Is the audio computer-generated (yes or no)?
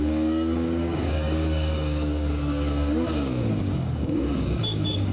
yes